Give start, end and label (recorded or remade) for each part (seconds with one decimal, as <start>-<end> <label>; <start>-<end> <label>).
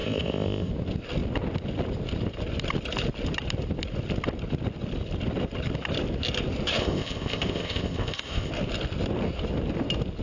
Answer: 0.0-0.7 remade; 0.7-6.8 recorded; 6.8-8.5 remade; 8.5-10.2 recorded